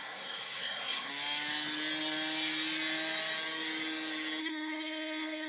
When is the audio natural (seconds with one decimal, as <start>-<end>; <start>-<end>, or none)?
1.1-4.4